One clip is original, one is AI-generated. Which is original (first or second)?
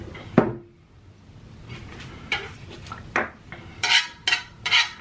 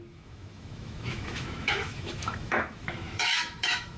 first